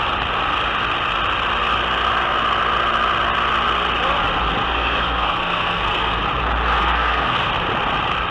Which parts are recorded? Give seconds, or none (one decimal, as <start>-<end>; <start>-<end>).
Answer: 0.0-4.6; 6.2-6.8; 7.5-8.3